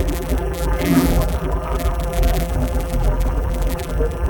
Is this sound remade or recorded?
remade